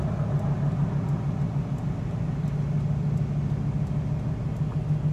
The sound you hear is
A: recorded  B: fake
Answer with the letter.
A